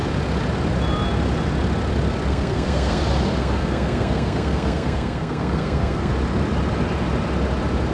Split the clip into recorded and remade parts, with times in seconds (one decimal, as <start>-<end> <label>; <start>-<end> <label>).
0.0-2.3 recorded; 2.3-3.0 remade; 3.0-3.4 recorded; 3.4-6.1 remade; 6.1-7.9 recorded